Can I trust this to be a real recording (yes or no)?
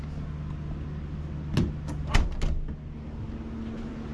yes